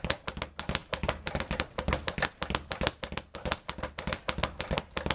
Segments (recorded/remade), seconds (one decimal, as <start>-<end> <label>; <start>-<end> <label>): 0.0-5.1 recorded

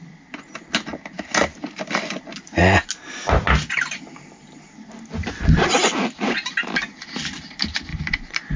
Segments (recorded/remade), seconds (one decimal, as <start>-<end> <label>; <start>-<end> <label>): 0.0-7.9 recorded; 7.9-8.6 remade

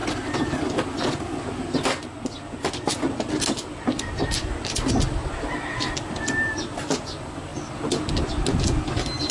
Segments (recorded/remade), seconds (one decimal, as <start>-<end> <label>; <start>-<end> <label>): 0.0-1.1 remade; 1.1-9.3 recorded

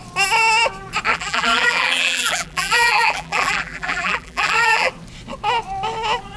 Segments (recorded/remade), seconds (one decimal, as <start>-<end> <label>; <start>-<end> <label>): 0.0-1.1 recorded; 1.1-4.9 remade; 4.9-6.4 recorded

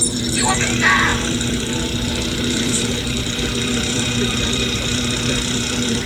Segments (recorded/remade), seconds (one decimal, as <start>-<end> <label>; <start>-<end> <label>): 0.0-6.1 remade

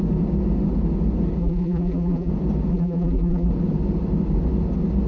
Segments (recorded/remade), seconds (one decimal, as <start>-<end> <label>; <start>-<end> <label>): 0.0-1.4 recorded; 1.4-2.3 remade; 2.3-2.7 recorded; 2.7-3.5 remade; 3.5-5.1 recorded